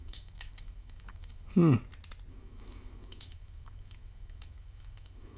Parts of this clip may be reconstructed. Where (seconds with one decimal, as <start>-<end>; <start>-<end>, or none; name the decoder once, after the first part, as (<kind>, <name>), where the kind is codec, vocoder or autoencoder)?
0.0-1.6 (autoencoder, DAC-VAE); 2.3-5.4